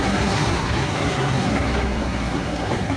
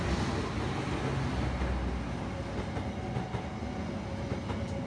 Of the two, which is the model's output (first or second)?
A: first